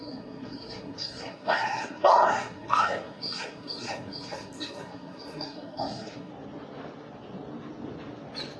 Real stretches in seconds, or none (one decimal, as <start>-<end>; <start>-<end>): 6.3-8.6